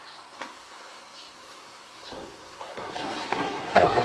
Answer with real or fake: fake